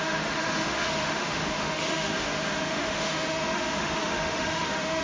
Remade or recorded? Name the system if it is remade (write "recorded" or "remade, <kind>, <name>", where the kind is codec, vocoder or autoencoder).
remade, autoencoder, DAC-VAE